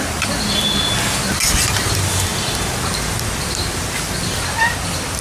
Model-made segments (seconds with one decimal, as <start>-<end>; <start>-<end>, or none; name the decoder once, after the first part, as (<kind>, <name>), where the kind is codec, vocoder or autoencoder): none